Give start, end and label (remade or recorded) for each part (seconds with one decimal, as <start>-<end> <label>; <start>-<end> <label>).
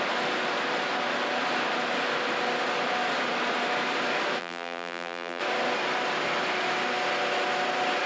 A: 0.0-4.4 recorded; 4.4-5.4 remade; 5.4-8.1 recorded